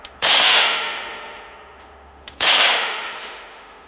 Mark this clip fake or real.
fake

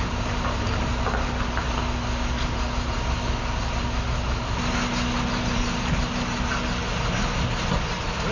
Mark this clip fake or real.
real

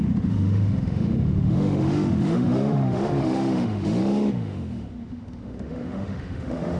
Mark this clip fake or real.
fake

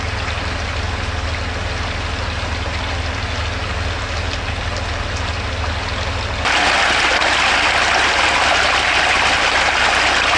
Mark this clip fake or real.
real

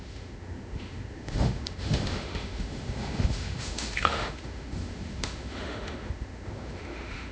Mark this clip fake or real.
fake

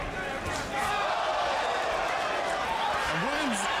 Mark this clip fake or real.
real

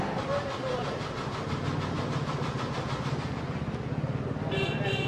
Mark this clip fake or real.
real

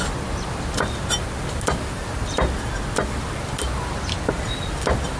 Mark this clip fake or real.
real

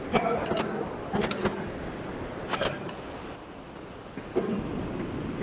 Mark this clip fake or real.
real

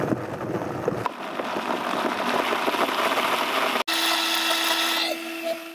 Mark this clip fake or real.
real